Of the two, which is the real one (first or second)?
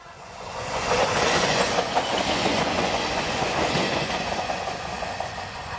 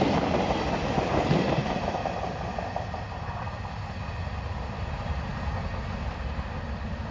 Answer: second